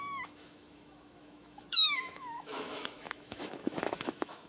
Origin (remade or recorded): remade